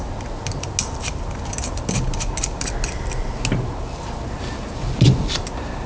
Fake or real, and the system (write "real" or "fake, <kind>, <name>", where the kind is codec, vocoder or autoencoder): real